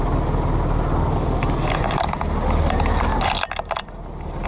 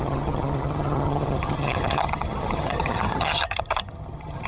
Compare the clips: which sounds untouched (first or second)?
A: first